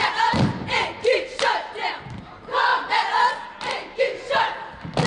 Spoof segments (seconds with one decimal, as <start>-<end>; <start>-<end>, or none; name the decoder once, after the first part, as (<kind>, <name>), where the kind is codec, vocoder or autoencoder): none